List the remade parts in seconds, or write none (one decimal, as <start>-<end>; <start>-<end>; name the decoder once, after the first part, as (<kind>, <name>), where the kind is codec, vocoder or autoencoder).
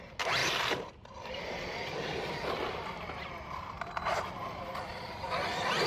none